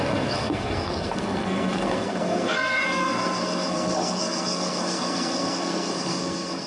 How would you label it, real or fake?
fake